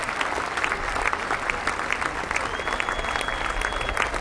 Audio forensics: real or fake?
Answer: real